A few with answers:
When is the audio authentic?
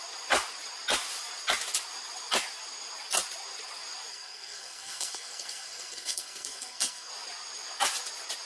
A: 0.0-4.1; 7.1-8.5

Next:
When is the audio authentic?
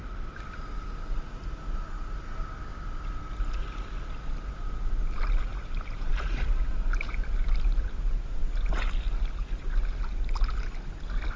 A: 0.0-11.4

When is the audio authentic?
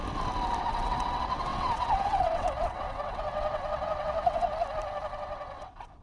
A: 0.0-0.6; 4.5-5.1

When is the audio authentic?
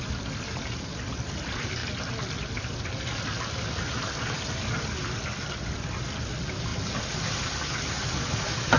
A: 0.0-8.8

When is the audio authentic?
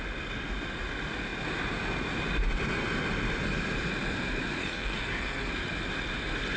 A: 0.0-4.6; 5.5-6.6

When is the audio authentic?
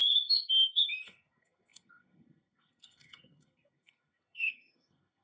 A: none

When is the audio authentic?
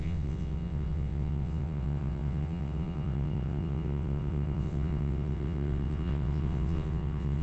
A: none